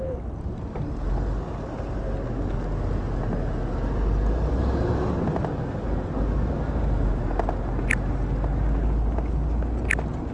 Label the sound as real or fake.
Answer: real